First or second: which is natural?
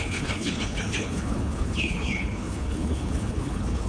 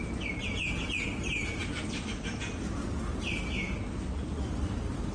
second